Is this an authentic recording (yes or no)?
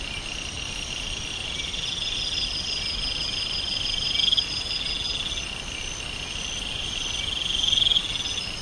yes